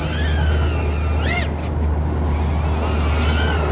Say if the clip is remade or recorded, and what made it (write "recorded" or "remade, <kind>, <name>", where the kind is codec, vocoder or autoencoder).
recorded